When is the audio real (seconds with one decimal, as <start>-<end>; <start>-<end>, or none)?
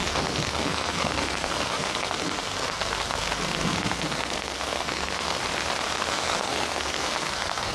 5.4-6.1